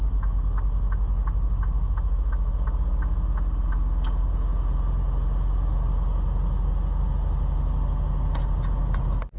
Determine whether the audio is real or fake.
real